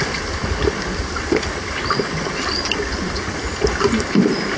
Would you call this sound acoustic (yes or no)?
yes